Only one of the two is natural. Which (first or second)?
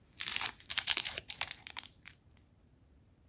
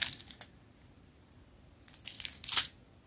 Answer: second